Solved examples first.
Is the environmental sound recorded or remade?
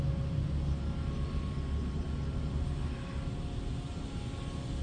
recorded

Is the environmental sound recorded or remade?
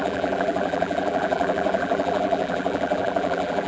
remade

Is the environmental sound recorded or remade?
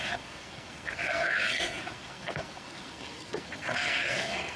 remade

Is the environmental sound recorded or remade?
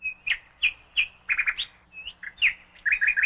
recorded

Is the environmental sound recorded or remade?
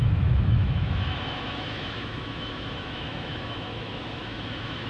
remade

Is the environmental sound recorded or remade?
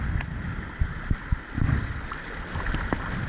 recorded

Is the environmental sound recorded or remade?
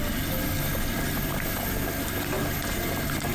recorded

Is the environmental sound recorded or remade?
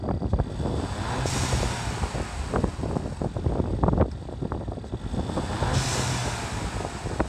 recorded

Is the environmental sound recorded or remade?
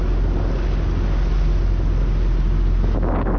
recorded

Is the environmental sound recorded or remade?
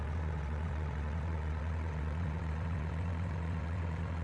remade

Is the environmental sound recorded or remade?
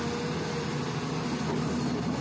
recorded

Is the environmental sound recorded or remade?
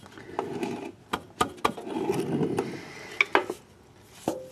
recorded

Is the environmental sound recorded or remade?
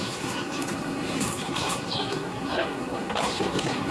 remade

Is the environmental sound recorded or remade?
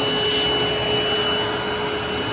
recorded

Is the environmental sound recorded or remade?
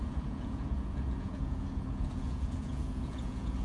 remade